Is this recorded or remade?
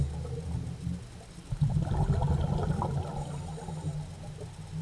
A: recorded